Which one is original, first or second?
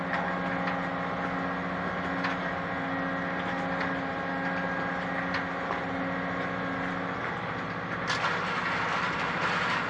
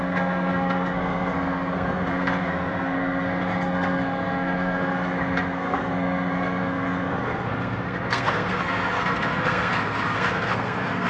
first